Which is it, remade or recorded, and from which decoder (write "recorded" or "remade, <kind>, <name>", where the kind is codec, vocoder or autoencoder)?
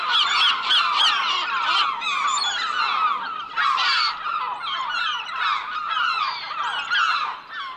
recorded